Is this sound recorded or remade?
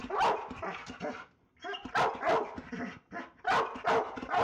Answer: recorded